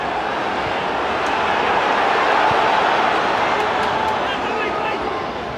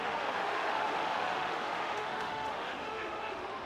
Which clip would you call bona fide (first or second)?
first